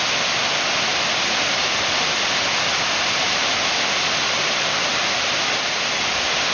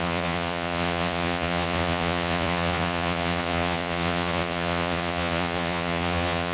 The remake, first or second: second